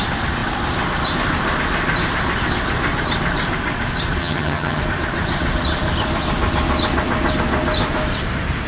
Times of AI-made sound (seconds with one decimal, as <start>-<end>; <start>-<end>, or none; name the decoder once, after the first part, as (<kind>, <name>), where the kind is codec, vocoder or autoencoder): 4.2-4.8 (vocoder, HiFi-GAN)